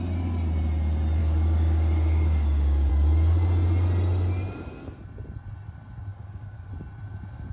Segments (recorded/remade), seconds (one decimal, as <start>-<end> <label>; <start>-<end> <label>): 0.0-1.2 recorded; 1.2-2.9 remade; 2.9-6.1 recorded; 6.1-6.7 remade; 6.7-7.5 recorded